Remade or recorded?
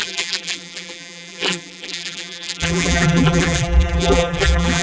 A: remade